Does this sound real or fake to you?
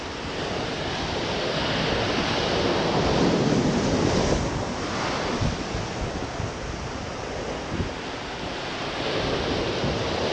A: real